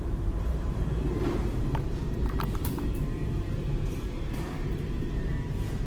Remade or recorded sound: remade